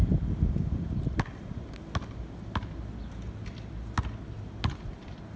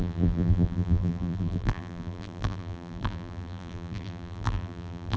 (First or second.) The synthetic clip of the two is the second